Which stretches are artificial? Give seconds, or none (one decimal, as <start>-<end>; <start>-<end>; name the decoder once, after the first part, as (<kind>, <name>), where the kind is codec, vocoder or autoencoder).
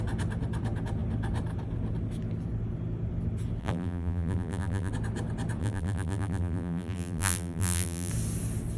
3.6-4.9 (vocoder, BigVGAN v2); 5.6-8.1